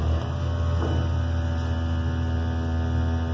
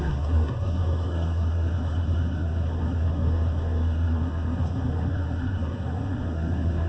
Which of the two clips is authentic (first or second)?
first